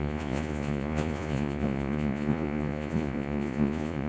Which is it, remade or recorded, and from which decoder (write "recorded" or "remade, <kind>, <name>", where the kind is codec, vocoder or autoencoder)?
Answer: remade, vocoder, Vocos